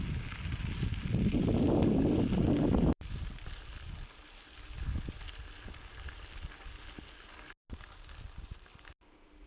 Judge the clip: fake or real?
real